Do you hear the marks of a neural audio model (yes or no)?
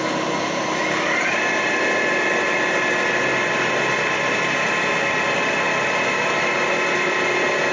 no